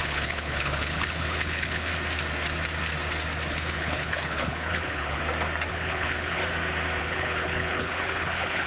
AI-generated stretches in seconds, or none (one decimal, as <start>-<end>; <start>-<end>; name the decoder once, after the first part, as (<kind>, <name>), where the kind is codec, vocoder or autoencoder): 0.0-1.9 (codec, HILCodec); 3.5-5.2; 5.7-6.4; 7.0-8.7